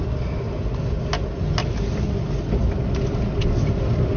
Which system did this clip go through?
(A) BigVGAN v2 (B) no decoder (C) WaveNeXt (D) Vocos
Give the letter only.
B